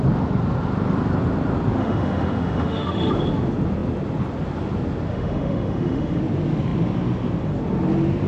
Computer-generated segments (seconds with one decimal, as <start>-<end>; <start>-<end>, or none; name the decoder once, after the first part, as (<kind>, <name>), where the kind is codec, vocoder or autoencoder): 1.8-3.1 (autoencoder, DAC-VAE); 5.1-6.2